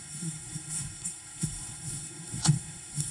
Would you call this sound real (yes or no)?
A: no